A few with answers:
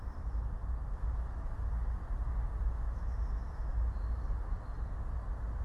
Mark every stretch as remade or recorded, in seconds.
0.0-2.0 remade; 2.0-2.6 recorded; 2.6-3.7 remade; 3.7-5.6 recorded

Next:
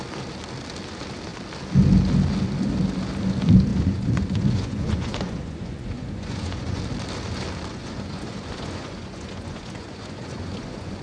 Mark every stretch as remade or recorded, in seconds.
0.0-3.7 recorded; 3.7-6.8 remade; 6.8-7.7 recorded; 7.7-11.0 remade

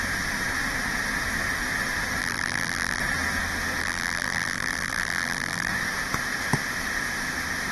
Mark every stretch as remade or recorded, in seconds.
0.0-2.2 recorded; 2.2-3.0 remade; 3.0-3.8 recorded; 3.8-5.7 remade; 5.7-7.7 recorded